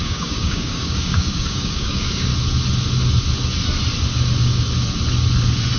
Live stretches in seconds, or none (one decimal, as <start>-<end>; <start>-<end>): 2.3-5.8